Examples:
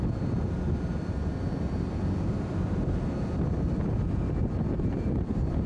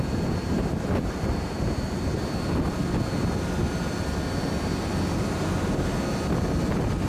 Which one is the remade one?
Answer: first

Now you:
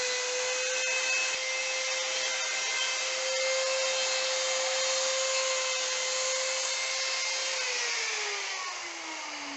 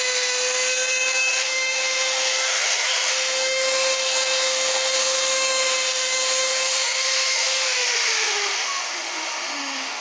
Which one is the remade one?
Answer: second